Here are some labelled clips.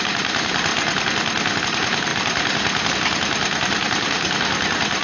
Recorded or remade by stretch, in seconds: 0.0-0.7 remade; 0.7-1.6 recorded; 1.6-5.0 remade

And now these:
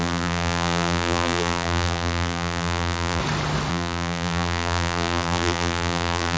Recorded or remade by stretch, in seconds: 0.0-3.2 remade; 3.2-3.7 recorded; 3.7-6.4 remade